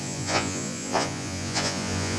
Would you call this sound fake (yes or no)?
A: yes